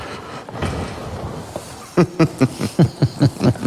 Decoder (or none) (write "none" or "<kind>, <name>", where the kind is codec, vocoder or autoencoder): none